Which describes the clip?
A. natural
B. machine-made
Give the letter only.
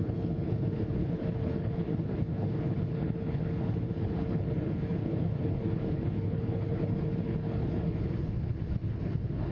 B